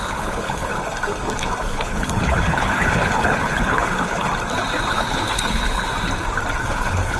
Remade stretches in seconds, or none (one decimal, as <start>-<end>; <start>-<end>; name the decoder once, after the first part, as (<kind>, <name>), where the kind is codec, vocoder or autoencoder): 0.0-0.7 (codec, HILCodec); 1.6-4.3; 4.9-5.9; 6.6-7.2